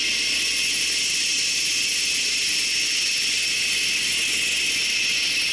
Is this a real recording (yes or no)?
yes